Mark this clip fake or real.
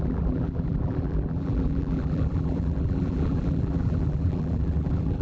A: fake